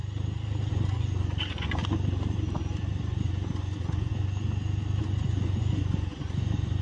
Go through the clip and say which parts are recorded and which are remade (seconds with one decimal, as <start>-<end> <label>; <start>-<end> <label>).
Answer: 0.0-0.7 recorded; 0.7-1.8 remade; 1.8-2.9 recorded; 2.9-4.1 remade; 4.1-5.0 recorded; 5.0-6.8 remade